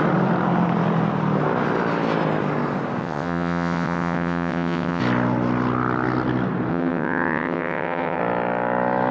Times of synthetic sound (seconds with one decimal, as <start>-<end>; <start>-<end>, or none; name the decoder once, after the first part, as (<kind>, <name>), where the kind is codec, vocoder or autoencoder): 3.0-5.0 (vocoder, WaveNeXt); 6.7-8.2